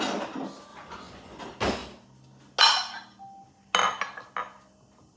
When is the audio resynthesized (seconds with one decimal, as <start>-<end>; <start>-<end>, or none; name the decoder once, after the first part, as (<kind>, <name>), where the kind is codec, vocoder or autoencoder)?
0.7-1.4 (vocoder, Vocos)